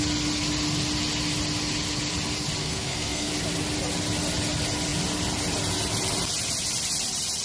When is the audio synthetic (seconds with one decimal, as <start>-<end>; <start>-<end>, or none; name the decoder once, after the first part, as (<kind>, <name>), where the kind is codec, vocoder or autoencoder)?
2.6-3.3 (codec, SNAC)